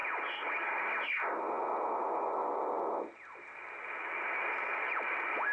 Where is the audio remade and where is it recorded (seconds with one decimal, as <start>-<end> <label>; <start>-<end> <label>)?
0.0-2.4 recorded; 2.4-5.5 remade